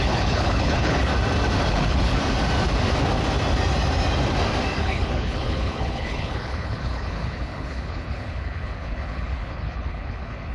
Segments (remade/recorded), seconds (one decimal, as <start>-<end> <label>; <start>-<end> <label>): 0.0-1.1 remade; 1.1-1.7 recorded; 1.7-2.2 remade; 2.2-4.8 recorded; 4.8-10.5 remade